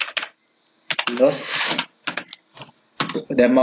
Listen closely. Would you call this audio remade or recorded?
recorded